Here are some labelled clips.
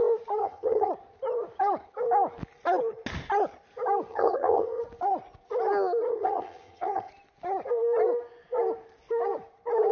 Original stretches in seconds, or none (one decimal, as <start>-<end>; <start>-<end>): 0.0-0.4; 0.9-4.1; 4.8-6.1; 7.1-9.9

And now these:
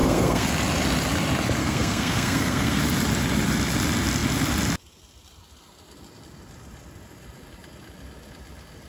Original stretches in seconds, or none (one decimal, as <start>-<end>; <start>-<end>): 0.5-1.6; 2.8-8.9

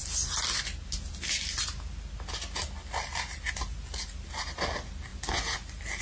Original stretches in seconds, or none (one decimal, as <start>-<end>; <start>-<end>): 0.0-6.0